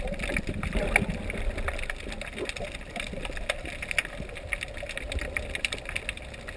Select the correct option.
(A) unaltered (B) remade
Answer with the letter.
A